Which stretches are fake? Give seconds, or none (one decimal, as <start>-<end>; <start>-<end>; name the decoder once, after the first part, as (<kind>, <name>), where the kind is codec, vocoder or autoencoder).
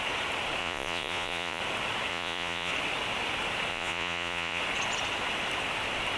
0.6-1.6 (vocoder, Vocos); 2.1-2.7; 3.7-4.6